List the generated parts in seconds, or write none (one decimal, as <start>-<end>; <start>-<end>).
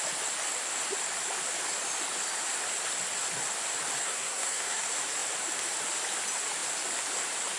4.0-4.8